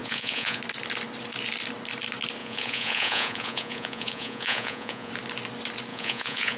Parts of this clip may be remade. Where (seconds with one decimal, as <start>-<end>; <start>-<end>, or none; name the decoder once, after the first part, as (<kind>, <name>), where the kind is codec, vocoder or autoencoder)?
0.0-0.6 (vocoder, Vocos); 2.4-5.1; 5.9-6.6

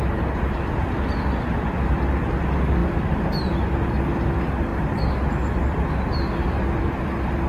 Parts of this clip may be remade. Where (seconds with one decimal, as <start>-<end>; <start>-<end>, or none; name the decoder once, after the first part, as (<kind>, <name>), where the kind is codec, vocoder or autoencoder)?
none